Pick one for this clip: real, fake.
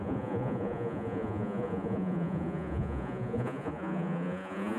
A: fake